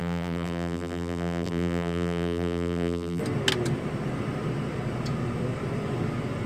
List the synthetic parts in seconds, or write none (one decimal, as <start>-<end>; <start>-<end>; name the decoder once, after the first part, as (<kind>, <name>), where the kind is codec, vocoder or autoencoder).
0.0-3.2 (vocoder, BigVGAN v2)